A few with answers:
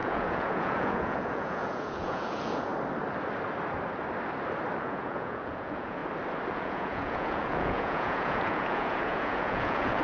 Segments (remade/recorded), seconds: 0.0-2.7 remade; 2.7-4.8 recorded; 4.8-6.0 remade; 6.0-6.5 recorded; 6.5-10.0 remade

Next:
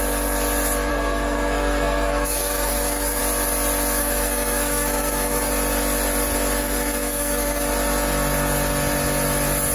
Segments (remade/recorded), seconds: 0.0-0.9 recorded; 0.9-3.2 remade; 3.2-4.0 recorded; 4.0-5.5 remade; 5.5-6.6 recorded; 6.6-7.7 remade; 7.7-9.7 recorded

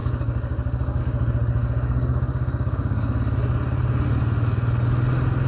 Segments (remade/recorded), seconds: 0.0-1.0 remade; 1.0-1.6 recorded; 1.6-3.2 remade; 3.2-5.5 recorded